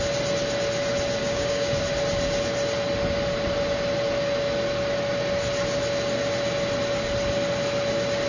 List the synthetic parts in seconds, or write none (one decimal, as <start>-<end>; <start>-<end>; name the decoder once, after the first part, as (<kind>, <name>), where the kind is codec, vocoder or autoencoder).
1.2-1.8 (codec, DAC)